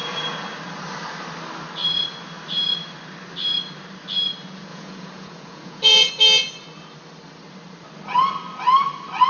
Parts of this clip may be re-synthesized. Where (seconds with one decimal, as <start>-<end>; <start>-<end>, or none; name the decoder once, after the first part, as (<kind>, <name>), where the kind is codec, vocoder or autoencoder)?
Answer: 4.7-6.1 (vocoder, Vocos)